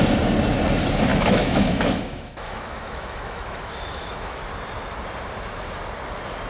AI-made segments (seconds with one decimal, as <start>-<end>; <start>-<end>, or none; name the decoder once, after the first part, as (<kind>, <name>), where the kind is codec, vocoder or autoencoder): 1.1-4.4 (autoencoder, DAC-VAE)